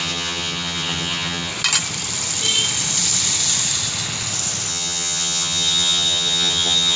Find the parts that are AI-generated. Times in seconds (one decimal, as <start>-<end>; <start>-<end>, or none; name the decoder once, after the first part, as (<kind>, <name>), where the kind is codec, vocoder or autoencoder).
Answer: 0.0-1.5 (vocoder, HiFi-GAN); 4.7-7.0

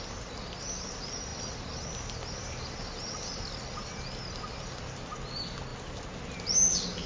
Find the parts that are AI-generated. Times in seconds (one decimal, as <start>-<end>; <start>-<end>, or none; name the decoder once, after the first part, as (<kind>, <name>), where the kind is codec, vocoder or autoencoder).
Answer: none

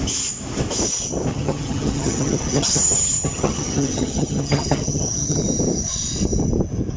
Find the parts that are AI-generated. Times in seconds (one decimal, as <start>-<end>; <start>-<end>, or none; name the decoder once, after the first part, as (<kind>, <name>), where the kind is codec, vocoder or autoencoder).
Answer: 1.3-5.4 (vocoder, HiFi-GAN)

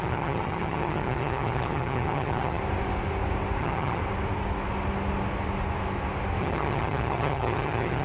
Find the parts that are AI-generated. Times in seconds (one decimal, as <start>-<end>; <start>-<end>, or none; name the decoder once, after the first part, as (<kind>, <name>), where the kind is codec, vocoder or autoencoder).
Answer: 0.0-2.6 (vocoder, HiFi-GAN); 3.6-4.0; 6.4-8.0

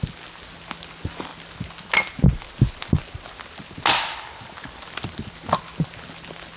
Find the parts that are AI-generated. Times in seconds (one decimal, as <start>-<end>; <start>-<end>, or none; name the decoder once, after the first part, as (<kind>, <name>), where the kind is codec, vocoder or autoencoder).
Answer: none

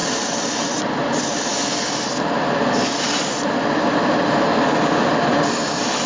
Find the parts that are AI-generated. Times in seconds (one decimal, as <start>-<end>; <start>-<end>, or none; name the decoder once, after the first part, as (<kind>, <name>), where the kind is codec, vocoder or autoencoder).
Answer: none

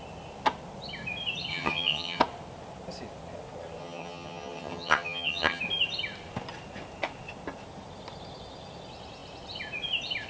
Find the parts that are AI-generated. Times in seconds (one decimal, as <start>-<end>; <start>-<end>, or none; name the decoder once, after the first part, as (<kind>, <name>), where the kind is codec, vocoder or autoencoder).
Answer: 1.5-2.2 (vocoder, HiFi-GAN); 3.8-5.6